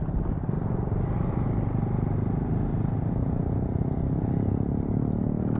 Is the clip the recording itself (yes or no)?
yes